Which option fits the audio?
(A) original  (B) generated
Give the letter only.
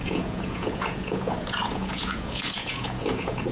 B